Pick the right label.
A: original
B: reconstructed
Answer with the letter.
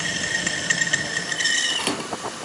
A